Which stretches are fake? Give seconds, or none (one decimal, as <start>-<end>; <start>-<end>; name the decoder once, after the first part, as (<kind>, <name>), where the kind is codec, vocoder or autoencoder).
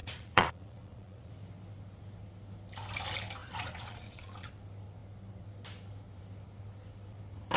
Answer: 0.0-1.3 (vocoder, Vocos); 3.4-4.5